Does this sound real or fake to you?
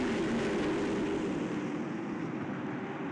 real